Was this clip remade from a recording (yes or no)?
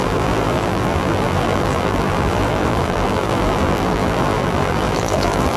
yes